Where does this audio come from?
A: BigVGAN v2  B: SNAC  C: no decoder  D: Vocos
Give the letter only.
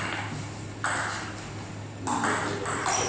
A